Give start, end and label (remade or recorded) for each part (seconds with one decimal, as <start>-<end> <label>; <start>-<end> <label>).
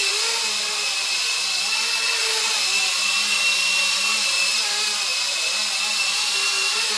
0.0-1.3 remade; 1.3-2.2 recorded; 2.2-3.0 remade; 3.0-5.1 recorded; 5.1-6.0 remade; 6.0-7.0 recorded